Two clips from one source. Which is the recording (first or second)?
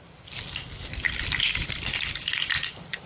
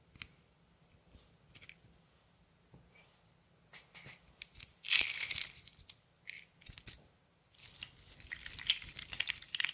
second